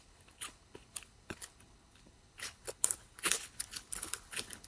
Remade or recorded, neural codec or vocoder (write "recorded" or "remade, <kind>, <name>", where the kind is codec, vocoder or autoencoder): remade, codec, HILCodec